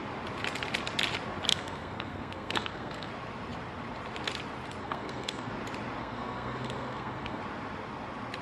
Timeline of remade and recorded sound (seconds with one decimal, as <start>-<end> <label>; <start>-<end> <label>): 0.0-1.5 recorded; 1.5-3.1 remade; 3.1-4.8 recorded; 4.8-5.5 remade; 5.5-6.0 recorded; 6.0-7.4 remade; 7.4-8.4 recorded